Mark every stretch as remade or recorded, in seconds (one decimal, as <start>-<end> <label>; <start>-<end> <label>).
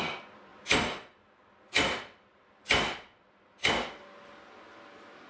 0.0-0.5 recorded; 0.5-3.7 remade; 3.7-5.3 recorded